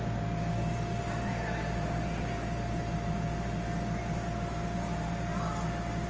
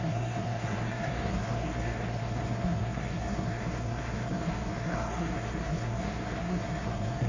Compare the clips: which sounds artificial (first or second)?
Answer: second